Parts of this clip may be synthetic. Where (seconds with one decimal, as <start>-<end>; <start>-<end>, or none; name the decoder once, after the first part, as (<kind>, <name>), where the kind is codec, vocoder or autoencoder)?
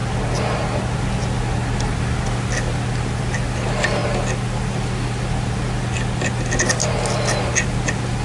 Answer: none